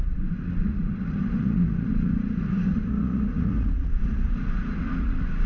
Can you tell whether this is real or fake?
fake